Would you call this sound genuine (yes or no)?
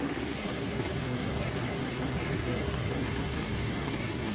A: no